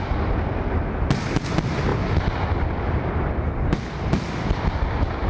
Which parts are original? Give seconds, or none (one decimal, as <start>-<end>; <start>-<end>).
0.0-5.3